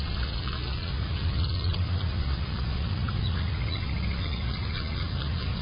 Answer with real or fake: fake